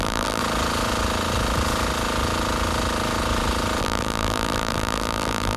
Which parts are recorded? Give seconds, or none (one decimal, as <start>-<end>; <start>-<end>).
0.4-3.8